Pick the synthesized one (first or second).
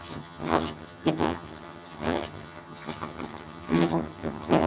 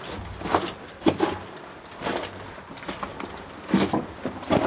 first